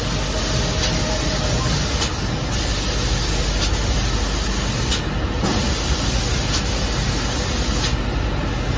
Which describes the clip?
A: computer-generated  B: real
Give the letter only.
B